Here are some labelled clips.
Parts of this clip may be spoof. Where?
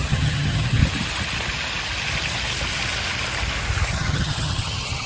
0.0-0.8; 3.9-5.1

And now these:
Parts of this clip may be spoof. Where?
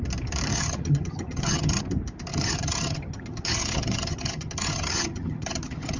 0.5-1.8; 2.3-6.0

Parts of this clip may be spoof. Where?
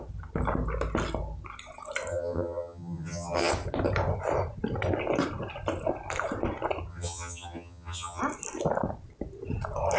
2.1-3.5; 6.9-8.2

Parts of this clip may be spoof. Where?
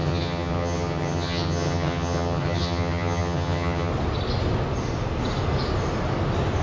0.0-3.9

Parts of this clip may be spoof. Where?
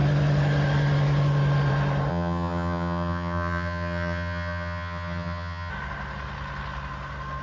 2.1-5.7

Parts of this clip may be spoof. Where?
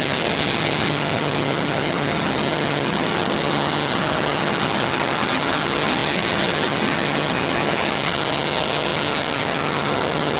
0.0-10.4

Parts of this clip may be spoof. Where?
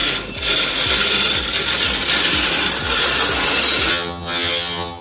3.9-5.0